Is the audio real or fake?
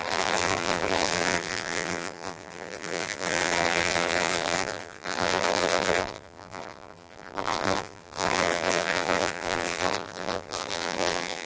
fake